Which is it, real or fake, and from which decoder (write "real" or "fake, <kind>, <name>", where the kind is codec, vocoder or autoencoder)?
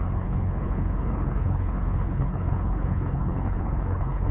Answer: fake, codec, HILCodec